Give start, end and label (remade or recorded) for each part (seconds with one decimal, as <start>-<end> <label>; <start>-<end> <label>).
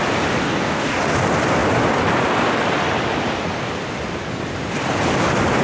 0.0-0.4 recorded; 0.4-1.0 remade; 1.0-5.6 recorded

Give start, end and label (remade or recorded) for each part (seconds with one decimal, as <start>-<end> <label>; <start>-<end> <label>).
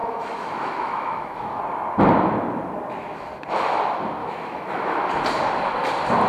0.0-1.6 remade; 1.6-4.2 recorded; 4.2-5.1 remade; 5.1-6.3 recorded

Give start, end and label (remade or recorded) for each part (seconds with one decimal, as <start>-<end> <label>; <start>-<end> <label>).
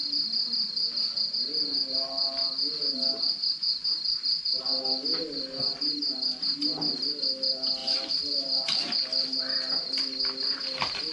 0.0-7.8 recorded; 7.8-9.4 remade; 9.4-11.1 recorded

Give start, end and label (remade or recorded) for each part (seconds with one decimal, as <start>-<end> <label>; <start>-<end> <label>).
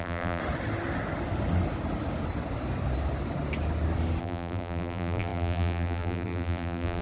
0.0-0.4 remade; 0.4-4.2 recorded; 4.2-7.0 remade